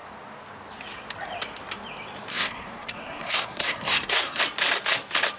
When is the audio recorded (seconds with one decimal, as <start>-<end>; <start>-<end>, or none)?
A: 0.0-2.3; 4.4-5.4

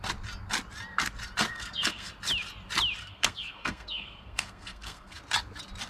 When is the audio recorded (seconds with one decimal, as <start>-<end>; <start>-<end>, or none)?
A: 0.0-1.5; 2.1-3.0; 5.2-5.9

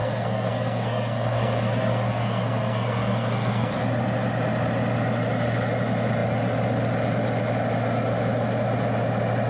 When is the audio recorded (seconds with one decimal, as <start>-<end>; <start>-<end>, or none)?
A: 3.7-9.5

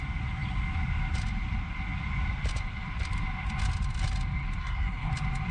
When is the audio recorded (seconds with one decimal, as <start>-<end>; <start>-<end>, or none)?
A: 0.0-4.6; 5.1-5.5

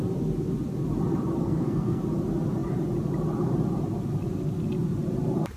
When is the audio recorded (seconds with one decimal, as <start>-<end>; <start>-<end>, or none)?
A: 0.0-1.4; 2.0-5.6

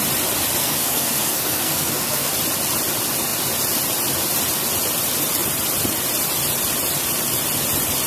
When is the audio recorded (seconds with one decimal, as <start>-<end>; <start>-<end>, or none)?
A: 0.0-0.6; 2.3-8.1

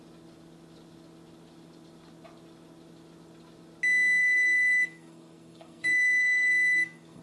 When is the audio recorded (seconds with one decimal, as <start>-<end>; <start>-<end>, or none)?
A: 0.0-4.2

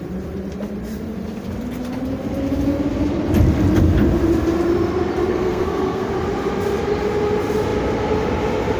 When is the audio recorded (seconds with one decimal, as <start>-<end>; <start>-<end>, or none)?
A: 0.0-5.3; 6.1-8.8